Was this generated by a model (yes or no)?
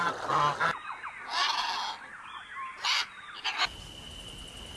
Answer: no